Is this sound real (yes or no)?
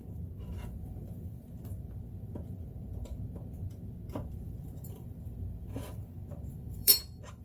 no